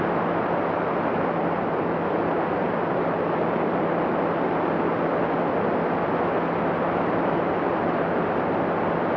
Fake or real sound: real